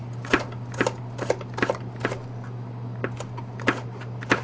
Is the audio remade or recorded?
recorded